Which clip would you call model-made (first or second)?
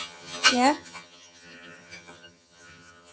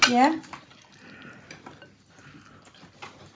first